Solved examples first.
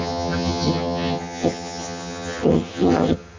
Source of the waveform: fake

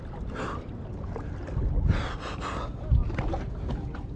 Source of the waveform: real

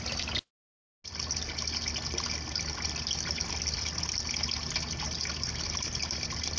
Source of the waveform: real